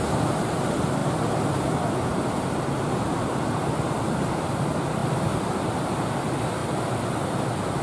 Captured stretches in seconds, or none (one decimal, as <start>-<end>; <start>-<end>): 0.0-5.0; 6.1-7.8